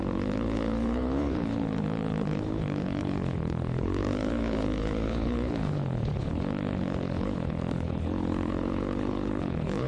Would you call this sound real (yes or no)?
no